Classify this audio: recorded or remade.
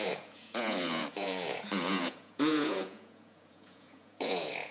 remade